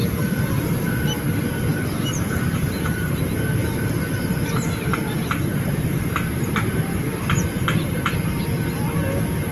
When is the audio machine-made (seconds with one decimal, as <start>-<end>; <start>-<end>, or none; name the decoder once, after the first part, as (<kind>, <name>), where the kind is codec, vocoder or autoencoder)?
1.7-3.2 (vocoder, BigVGAN v2); 3.6-8.8